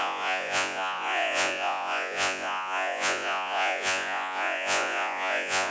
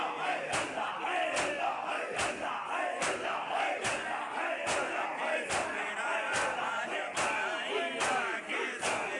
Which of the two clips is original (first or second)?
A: second